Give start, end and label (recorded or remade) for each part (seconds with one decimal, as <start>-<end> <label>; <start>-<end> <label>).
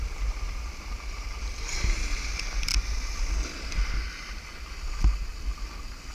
0.0-6.1 recorded